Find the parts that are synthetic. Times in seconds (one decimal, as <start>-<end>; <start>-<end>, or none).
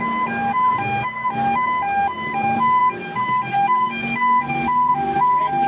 none